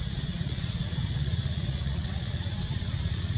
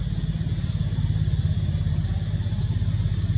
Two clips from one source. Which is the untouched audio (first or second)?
second